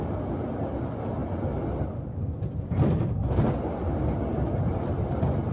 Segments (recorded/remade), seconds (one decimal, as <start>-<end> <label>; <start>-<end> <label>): 0.0-5.5 recorded